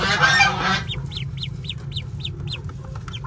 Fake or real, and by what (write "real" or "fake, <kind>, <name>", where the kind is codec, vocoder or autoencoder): real